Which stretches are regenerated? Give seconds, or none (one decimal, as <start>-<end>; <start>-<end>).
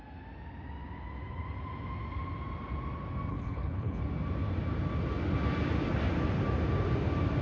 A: 3.3-4.0